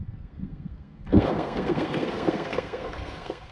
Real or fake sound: fake